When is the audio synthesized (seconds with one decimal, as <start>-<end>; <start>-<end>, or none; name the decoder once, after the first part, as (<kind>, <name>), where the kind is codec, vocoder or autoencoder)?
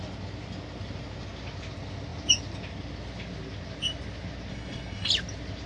4.5-5.1 (codec, SNAC)